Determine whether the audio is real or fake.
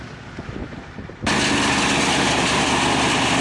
real